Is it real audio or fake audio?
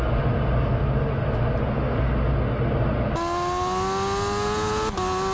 real